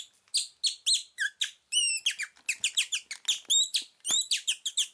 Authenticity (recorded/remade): recorded